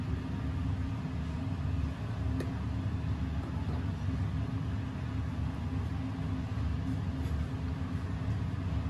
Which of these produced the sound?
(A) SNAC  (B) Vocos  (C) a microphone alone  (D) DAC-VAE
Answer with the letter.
C